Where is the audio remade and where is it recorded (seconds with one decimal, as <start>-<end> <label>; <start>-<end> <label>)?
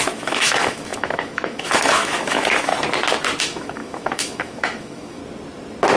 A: 0.0-2.7 remade; 2.7-3.4 recorded; 3.4-5.2 remade; 5.2-6.0 recorded